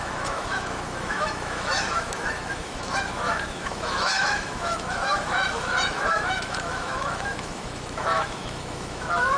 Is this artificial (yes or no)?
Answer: yes